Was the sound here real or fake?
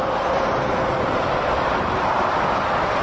real